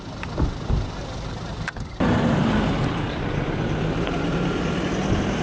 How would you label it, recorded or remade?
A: remade